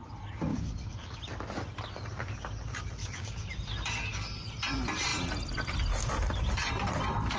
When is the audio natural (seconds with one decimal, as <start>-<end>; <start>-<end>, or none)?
0.0-0.5; 1.2-3.0; 3.5-7.4